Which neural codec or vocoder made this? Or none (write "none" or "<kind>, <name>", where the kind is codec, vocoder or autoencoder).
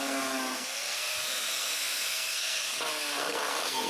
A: codec, SNAC